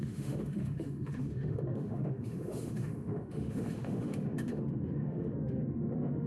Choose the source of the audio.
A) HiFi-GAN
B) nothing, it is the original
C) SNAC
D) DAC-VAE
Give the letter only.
D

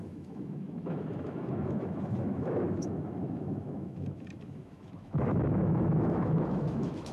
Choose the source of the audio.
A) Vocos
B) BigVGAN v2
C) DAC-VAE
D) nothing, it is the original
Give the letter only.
C